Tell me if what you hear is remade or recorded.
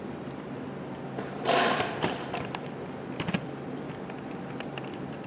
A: remade